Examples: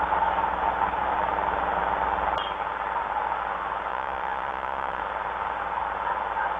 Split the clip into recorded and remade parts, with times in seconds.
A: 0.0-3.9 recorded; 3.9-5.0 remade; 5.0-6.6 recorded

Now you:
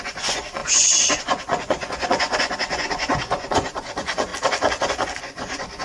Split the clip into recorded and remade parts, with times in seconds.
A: 0.0-4.3 remade; 4.3-5.2 recorded; 5.2-5.8 remade

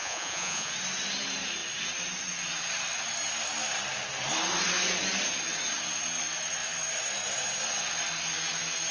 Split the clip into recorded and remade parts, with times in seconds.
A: 0.0-0.7 remade; 0.7-8.9 recorded